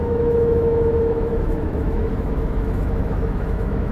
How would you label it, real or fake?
fake